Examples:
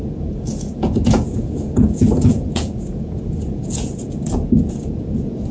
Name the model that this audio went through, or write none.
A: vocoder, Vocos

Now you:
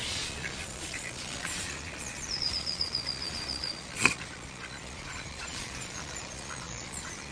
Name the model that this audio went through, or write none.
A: vocoder, Vocos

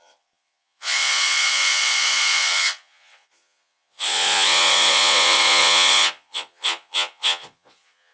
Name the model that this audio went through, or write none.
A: vocoder, Vocos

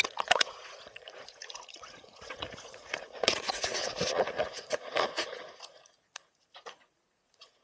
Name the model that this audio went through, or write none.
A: vocoder, Vocos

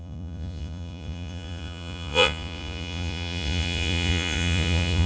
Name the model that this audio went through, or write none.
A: vocoder, Vocos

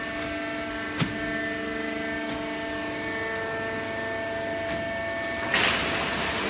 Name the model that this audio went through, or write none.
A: none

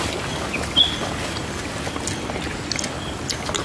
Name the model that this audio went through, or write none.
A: none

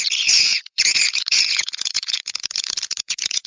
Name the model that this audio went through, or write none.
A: vocoder, Vocos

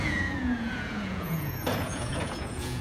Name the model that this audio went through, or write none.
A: vocoder, Vocos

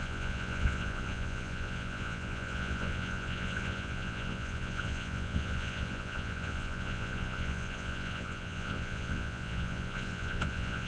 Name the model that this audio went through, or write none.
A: vocoder, Vocos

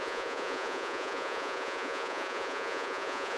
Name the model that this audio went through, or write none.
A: vocoder, Vocos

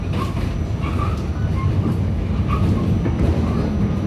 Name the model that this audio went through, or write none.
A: none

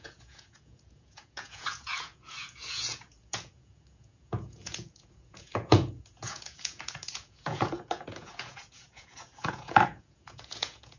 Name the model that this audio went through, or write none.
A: vocoder, Vocos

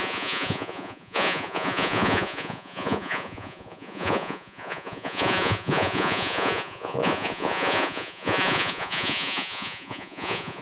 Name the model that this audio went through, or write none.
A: vocoder, Vocos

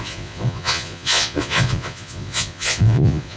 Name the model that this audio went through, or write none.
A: vocoder, Vocos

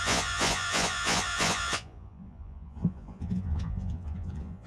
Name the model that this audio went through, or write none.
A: vocoder, Vocos